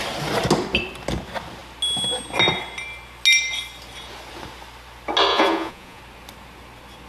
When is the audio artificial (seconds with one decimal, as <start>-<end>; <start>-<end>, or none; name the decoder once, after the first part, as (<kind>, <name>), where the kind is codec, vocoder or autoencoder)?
5.3-6.0 (vocoder, Vocos)

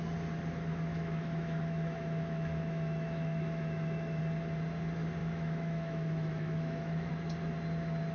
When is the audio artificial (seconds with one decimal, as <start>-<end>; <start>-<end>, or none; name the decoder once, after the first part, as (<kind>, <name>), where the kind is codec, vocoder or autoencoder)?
0.9-4.2 (autoencoder, DAC-VAE); 5.2-7.1

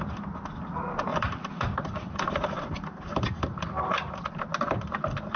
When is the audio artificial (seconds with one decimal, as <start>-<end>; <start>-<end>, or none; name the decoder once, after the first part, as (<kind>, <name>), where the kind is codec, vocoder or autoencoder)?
1.1-4.3 (vocoder, BigVGAN v2)

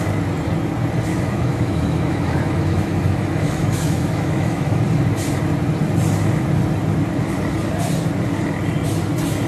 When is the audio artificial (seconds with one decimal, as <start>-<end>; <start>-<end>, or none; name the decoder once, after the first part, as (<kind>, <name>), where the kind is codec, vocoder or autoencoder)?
1.1-4.8 (autoencoder, DAC-VAE)

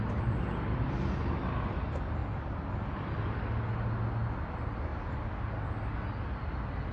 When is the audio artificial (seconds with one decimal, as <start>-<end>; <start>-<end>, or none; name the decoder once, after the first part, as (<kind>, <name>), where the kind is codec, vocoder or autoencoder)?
none

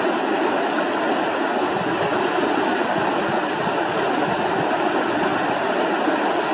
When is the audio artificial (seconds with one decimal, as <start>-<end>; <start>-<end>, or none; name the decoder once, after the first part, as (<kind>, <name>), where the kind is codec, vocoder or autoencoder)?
none